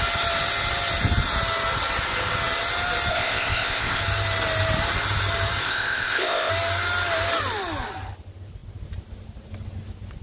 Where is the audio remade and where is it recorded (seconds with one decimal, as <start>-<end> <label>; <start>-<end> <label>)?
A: 0.0-3.1 recorded; 3.1-4.0 remade; 4.0-5.6 recorded; 5.6-6.5 remade; 6.5-10.2 recorded